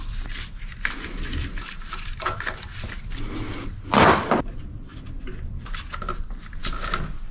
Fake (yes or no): no